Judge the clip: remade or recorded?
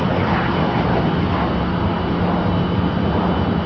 recorded